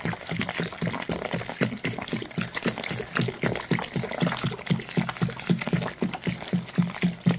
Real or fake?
real